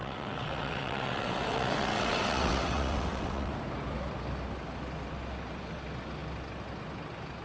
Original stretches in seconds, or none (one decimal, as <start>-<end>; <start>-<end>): 3.5-7.4